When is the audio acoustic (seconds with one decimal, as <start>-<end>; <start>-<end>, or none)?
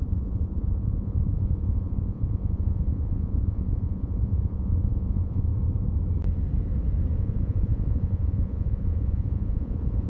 5.5-7.2